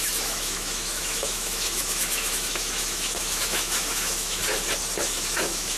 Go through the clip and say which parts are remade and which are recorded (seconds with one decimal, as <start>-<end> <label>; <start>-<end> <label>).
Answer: 0.0-4.4 remade; 4.4-5.0 recorded; 5.0-5.8 remade